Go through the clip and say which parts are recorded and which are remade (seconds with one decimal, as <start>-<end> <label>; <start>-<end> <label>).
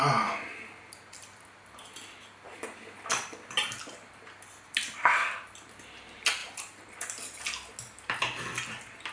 0.0-9.1 recorded